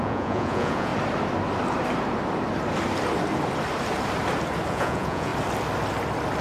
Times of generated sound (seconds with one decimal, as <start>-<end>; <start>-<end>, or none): 0.0-0.9; 4.7-5.3